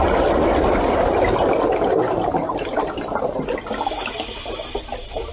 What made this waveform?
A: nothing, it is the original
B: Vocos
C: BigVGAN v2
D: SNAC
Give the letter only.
A